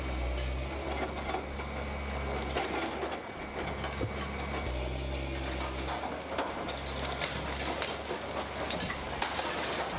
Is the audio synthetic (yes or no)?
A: no